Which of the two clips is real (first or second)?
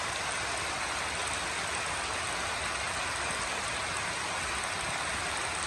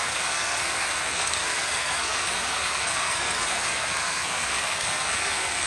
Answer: first